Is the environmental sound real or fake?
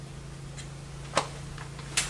real